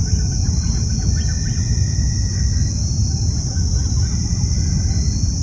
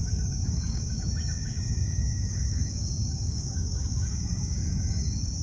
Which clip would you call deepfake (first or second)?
second